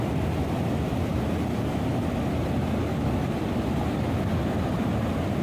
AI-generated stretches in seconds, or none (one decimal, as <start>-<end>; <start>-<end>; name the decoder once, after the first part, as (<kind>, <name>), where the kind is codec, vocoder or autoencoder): none